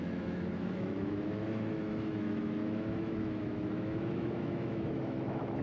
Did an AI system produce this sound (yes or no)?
yes